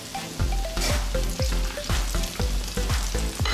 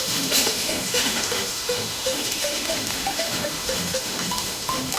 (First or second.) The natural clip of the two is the first